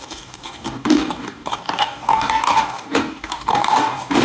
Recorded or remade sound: remade